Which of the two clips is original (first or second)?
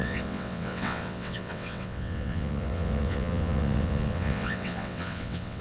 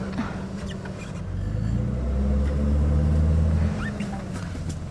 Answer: second